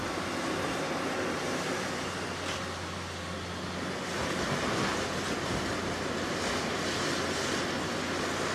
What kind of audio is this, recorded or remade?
recorded